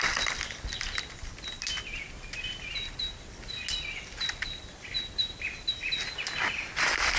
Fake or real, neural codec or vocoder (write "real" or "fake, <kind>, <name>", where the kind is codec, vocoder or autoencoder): real